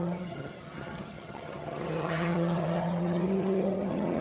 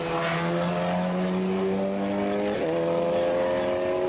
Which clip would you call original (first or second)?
second